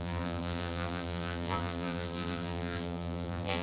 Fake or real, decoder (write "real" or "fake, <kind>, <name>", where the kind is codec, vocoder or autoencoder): fake, vocoder, BigVGAN v2